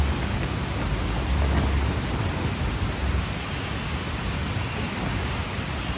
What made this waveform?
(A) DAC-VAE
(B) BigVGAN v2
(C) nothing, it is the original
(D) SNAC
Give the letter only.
C